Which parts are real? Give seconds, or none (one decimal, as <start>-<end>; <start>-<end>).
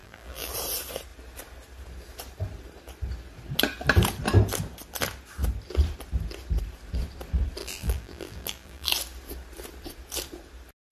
0.5-7.6; 8.9-10.9